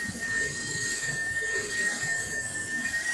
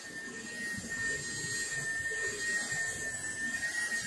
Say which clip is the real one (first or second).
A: second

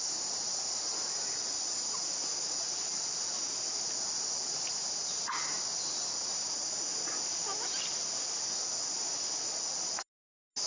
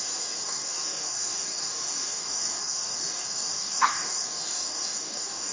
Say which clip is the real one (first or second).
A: first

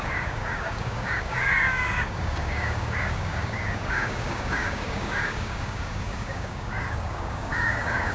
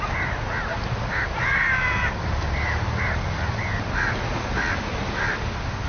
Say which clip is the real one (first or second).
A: second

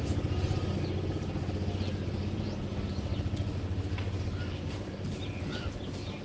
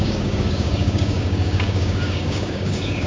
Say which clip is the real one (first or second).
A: first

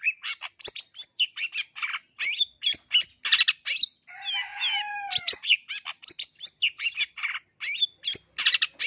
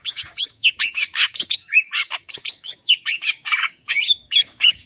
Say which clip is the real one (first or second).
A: first